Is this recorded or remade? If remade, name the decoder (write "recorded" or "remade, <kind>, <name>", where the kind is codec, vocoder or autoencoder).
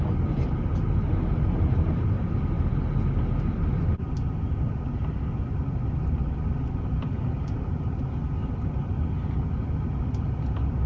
recorded